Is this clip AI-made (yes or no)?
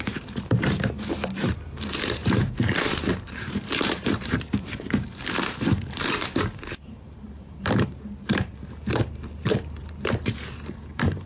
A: yes